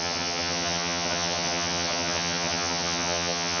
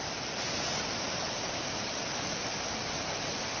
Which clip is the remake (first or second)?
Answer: first